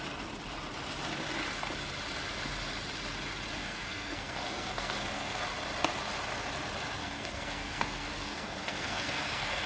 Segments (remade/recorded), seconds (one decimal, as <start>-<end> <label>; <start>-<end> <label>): 0.0-3.6 recorded; 3.6-5.4 remade; 5.4-7.0 recorded; 7.0-9.7 remade